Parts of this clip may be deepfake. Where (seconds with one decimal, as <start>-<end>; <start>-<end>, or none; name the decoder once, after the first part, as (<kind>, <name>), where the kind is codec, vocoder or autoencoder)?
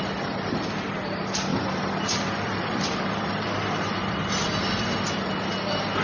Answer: 1.5-4.7 (vocoder, BigVGAN v2)